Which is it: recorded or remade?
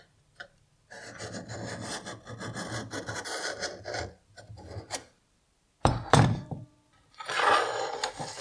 remade